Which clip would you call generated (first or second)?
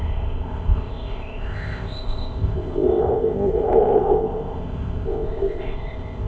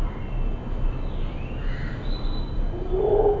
first